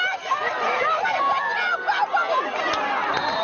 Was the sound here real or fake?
fake